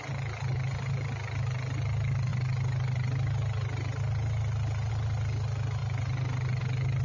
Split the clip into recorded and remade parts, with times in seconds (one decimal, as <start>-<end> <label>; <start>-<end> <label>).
0.0-7.0 recorded